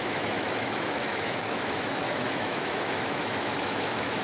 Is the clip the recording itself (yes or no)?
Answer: no